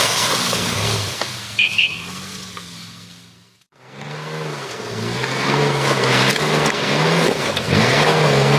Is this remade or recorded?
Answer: remade